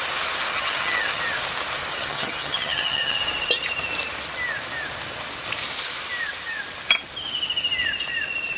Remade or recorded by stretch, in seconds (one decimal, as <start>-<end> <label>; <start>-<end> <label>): 0.0-0.5 recorded; 0.5-1.2 remade; 1.2-1.9 recorded; 1.9-3.2 remade; 3.2-8.6 recorded